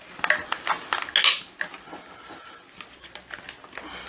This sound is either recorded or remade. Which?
recorded